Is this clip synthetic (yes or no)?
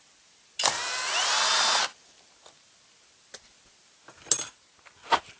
no